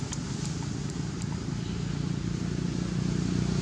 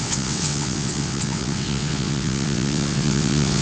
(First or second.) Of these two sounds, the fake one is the second